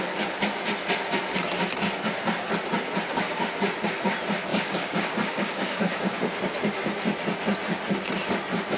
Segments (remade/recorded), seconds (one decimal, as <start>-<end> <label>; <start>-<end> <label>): 0.0-4.5 recorded; 4.5-6.2 remade; 6.2-8.8 recorded